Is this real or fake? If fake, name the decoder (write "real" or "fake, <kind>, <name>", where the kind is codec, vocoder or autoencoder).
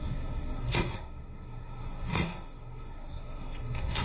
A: fake, codec, SNAC